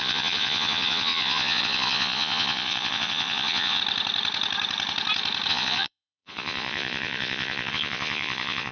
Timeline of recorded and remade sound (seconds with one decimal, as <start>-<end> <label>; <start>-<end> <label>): 0.0-3.8 remade; 3.8-5.5 recorded; 5.5-8.7 remade